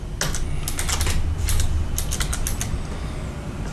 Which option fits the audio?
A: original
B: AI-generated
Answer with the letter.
A